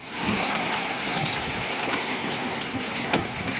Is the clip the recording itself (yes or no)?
no